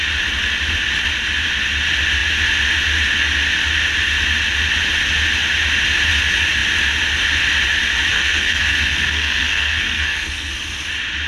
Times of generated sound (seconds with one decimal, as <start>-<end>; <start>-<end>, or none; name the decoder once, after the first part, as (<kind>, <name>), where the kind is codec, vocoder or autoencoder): 8.1-10.5 (codec, SNAC)